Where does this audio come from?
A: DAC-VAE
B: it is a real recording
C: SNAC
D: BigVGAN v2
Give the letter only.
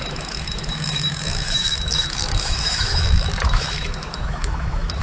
A